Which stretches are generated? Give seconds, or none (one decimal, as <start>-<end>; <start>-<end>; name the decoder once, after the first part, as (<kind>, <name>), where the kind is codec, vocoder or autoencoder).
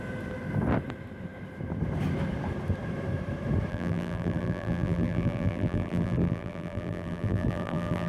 3.7-8.1 (vocoder, BigVGAN v2)